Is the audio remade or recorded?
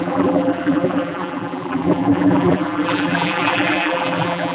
remade